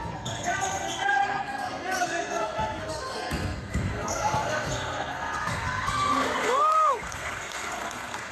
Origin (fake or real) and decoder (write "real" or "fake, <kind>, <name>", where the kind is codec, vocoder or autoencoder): fake, codec, SNAC